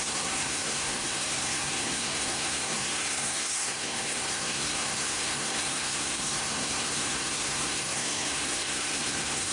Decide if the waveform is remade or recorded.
remade